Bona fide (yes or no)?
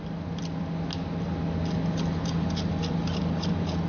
yes